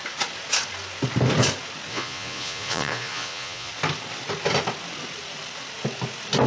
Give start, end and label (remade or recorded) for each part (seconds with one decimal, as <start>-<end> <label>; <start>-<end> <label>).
0.0-1.9 recorded; 1.9-3.7 remade; 3.7-6.5 recorded